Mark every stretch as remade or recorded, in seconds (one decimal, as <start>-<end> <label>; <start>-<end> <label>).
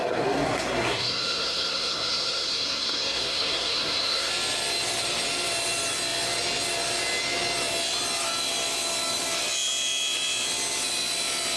0.0-4.3 remade; 4.3-11.6 recorded